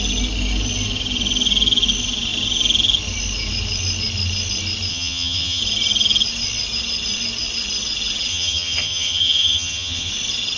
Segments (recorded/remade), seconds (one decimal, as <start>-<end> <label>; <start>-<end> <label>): 0.0-4.9 recorded; 4.9-5.6 remade; 5.6-8.3 recorded; 8.3-10.1 remade; 10.1-10.6 recorded